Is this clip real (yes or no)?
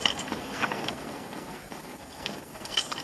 no